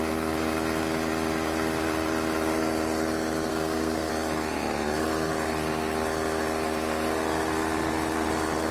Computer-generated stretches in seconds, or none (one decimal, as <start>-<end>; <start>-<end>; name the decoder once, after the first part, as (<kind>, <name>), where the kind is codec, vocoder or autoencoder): 3.5-4.1 (codec, SNAC)